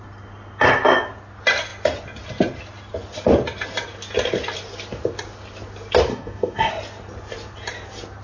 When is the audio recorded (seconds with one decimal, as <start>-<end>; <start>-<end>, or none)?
0.0-6.1; 6.7-8.2

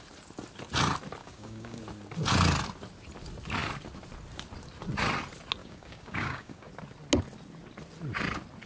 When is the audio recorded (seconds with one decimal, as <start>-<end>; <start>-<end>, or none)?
0.0-1.2; 1.8-5.6; 6.7-8.7

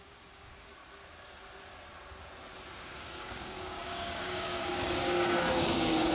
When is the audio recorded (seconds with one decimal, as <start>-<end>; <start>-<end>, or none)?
0.7-2.8

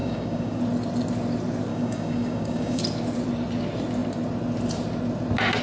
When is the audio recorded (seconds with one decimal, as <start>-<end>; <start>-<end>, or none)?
0.6-1.7; 2.8-5.6

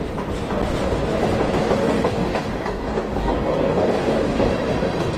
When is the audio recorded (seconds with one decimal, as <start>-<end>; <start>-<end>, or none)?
0.0-1.8; 4.5-5.2

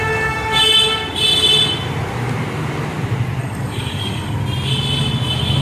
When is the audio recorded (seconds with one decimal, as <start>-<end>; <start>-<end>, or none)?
0.6-3.4; 4.4-5.6

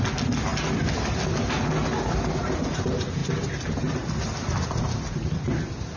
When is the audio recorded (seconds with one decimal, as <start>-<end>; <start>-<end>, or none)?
0.0-6.0

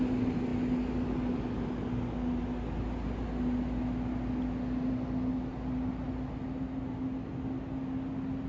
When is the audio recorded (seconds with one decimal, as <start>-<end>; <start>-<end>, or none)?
0.0-8.5